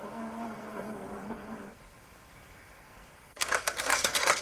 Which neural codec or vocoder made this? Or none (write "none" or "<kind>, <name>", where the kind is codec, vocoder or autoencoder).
codec, SNAC